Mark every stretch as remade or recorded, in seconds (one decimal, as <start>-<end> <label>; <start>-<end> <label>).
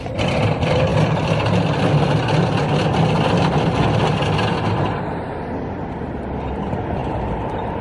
0.0-7.0 recorded; 7.0-7.8 remade